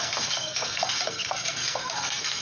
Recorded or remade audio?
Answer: remade